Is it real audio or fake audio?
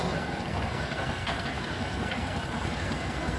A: fake